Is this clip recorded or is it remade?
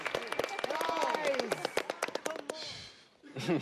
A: recorded